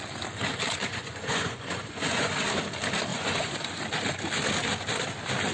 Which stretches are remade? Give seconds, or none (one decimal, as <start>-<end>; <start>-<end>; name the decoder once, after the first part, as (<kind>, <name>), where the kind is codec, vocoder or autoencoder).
0.8-2.3 (vocoder, Vocos); 3.1-3.8